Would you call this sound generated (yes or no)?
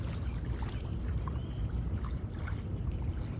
no